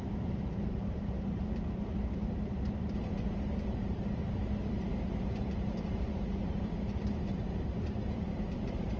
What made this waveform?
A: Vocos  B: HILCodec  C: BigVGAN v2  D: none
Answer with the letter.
C